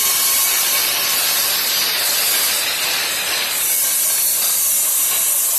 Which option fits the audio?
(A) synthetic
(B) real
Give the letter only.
B